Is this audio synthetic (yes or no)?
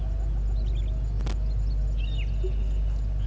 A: no